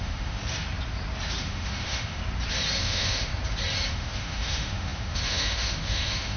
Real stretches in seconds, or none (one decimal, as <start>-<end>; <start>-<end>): 0.4-1.4; 2.2-2.8; 3.3-3.9

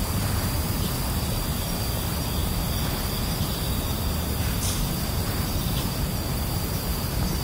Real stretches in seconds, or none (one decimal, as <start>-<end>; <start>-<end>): 0.0-7.4

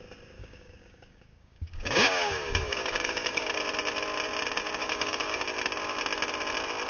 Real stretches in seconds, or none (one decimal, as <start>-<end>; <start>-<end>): 0.0-0.4; 3.6-4.8; 5.4-6.9

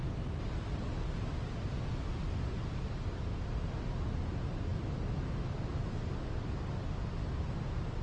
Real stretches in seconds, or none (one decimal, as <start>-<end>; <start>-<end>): 0.0-8.0

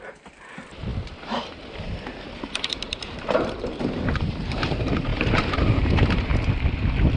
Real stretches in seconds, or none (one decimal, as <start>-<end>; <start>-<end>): 6.3-7.2